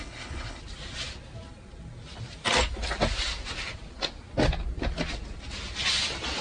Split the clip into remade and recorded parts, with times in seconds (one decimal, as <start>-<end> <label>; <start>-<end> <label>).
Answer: 0.0-0.6 remade; 0.6-6.4 recorded